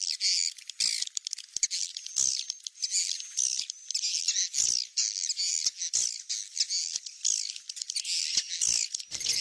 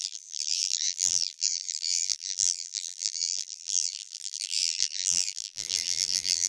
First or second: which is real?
first